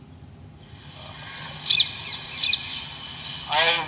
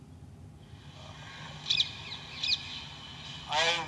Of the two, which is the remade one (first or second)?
first